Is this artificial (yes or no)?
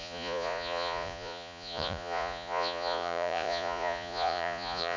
yes